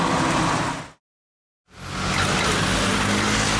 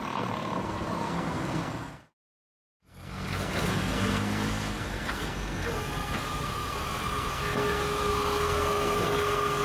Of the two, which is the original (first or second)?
first